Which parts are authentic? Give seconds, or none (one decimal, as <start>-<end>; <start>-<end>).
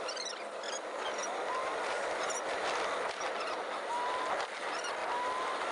0.0-5.7